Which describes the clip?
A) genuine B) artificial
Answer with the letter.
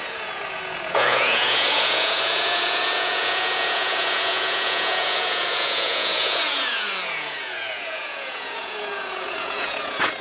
B